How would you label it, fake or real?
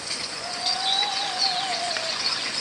fake